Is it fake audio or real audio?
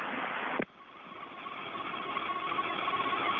real